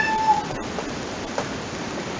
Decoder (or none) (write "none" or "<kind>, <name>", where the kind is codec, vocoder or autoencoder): none